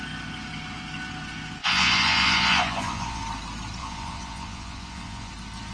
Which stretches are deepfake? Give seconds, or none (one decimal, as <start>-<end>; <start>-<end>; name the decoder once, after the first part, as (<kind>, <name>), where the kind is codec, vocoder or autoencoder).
1.6-3.2 (vocoder, Vocos); 3.8-5.3